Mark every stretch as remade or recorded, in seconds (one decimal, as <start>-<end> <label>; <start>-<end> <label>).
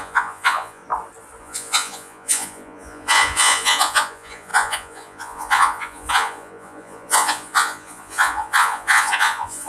0.0-0.8 remade; 0.8-1.4 recorded; 1.4-9.7 remade